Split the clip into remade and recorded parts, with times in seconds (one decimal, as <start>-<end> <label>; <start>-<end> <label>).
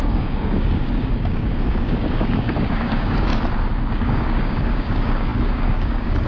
0.0-3.3 remade; 3.3-3.9 recorded; 3.9-6.3 remade